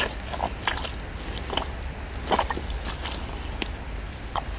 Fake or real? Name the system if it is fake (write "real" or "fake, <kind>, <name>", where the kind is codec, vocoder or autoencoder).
real